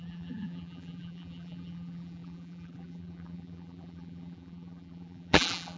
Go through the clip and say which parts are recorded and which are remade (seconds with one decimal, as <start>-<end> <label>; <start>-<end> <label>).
0.0-5.8 remade